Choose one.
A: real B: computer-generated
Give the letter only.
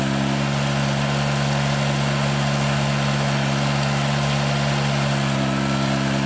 A